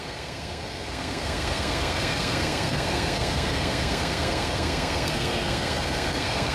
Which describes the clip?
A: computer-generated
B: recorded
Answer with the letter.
A